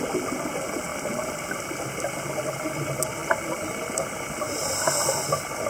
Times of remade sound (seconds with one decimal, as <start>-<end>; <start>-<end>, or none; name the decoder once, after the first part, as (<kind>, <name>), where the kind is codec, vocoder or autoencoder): none